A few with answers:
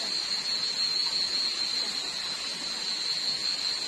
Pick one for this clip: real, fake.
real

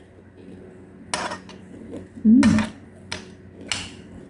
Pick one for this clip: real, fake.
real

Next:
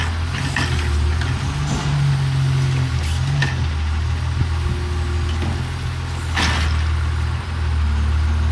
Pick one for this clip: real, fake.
real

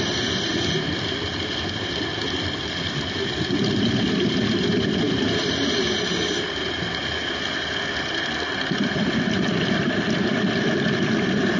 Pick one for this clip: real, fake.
real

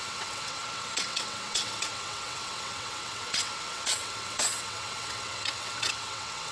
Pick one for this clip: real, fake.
fake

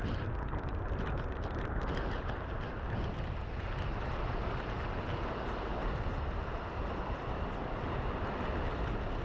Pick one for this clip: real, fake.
real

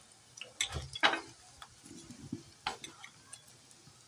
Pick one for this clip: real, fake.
real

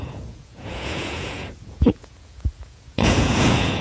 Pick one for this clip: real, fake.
fake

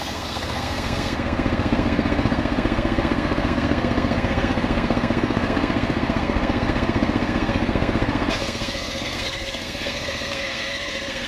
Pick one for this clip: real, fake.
fake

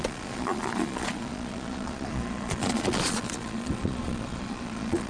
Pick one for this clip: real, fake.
fake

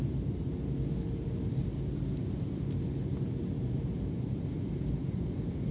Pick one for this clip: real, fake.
real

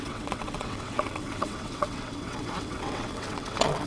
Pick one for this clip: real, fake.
fake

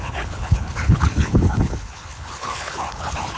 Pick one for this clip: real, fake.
fake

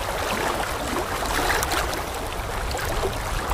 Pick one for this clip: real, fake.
real